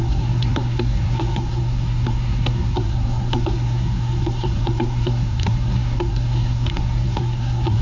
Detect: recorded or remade remade